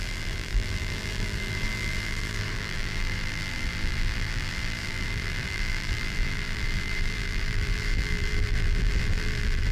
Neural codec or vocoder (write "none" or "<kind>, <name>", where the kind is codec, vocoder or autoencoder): vocoder, BigVGAN v2